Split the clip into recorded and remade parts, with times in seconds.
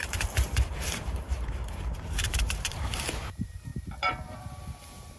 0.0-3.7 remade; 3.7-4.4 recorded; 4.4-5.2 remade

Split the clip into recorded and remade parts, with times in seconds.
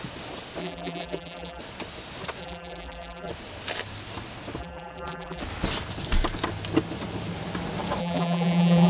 0.0-0.6 recorded; 0.6-1.6 remade; 1.6-2.4 recorded; 2.4-3.3 remade; 3.3-4.6 recorded; 4.6-5.4 remade; 5.4-8.0 recorded; 8.0-8.9 remade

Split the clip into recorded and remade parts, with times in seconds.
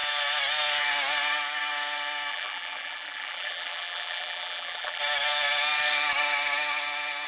0.0-2.3 recorded; 2.3-5.0 remade; 5.0-7.3 recorded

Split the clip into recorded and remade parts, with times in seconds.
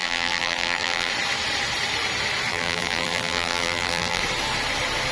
0.0-1.1 remade; 1.1-2.5 recorded; 2.5-4.2 remade; 4.2-5.1 recorded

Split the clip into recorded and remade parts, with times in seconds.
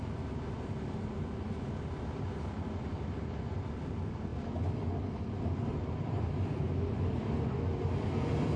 0.0-5.7 recorded; 5.7-6.7 remade; 6.7-8.6 recorded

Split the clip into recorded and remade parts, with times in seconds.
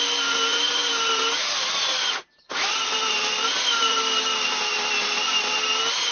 0.0-0.5 recorded; 0.5-4.2 remade; 4.2-6.1 recorded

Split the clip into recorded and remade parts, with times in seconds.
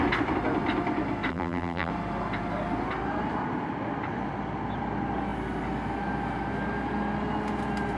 0.0-1.3 recorded; 1.3-1.9 remade; 1.9-8.0 recorded